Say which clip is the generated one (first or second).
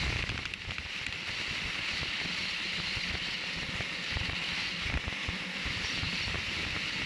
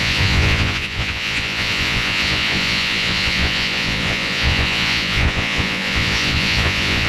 second